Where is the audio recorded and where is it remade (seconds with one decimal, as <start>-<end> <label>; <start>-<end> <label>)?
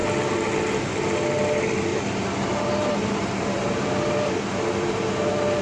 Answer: 0.0-1.9 recorded; 1.9-5.6 remade